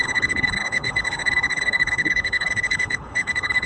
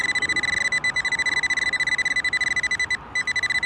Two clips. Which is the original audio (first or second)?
second